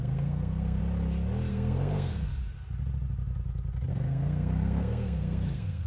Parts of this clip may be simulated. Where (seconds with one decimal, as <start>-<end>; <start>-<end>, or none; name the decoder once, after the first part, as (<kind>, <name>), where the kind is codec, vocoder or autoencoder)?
0.0-0.8 (codec, SNAC); 1.5-2.3; 3.9-5.9